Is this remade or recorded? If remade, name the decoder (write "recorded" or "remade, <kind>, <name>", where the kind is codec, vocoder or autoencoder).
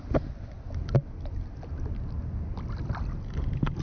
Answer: recorded